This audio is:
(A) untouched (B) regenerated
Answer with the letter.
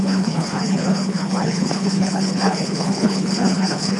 B